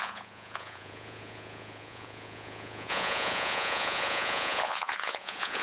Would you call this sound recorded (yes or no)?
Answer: no